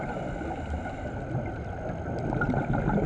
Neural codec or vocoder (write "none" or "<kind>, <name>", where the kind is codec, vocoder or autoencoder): none